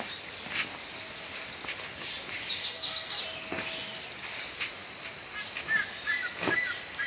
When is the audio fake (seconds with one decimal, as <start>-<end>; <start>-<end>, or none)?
2.6-3.2